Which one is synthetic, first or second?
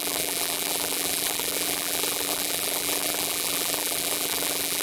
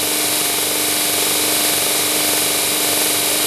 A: first